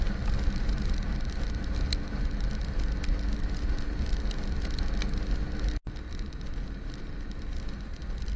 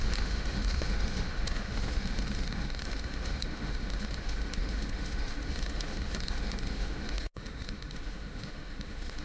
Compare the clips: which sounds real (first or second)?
first